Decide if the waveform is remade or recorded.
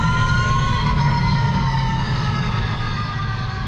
remade